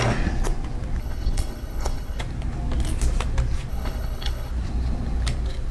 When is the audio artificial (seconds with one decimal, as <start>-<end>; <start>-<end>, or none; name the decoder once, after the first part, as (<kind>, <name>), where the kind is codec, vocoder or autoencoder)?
1.0-2.2 (codec, HILCodec); 3.7-4.5